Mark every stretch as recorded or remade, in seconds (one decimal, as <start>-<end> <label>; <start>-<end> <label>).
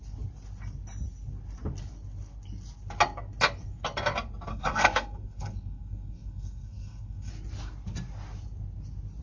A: 0.0-4.5 recorded; 4.5-7.3 remade; 7.3-9.2 recorded